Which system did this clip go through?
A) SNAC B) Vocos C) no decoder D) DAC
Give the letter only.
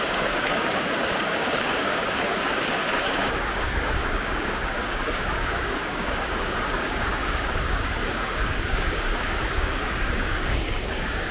D